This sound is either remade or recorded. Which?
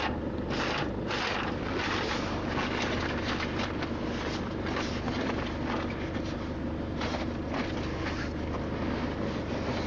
recorded